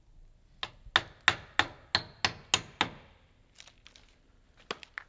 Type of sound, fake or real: real